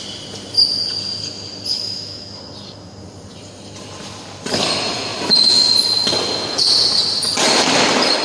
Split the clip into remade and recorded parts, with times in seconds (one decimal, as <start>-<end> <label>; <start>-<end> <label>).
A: 0.0-1.8 recorded; 1.8-2.4 remade; 2.4-8.2 recorded